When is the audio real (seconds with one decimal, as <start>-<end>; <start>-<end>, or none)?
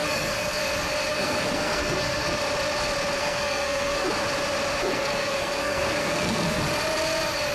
0.6-1.1; 2.4-3.2; 4.1-4.8; 6.6-7.5